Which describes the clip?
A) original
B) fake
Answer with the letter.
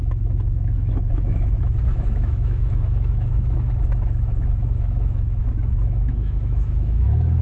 B